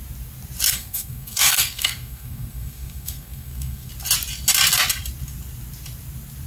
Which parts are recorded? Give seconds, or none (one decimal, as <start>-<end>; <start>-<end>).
0.0-0.7; 3.9-6.5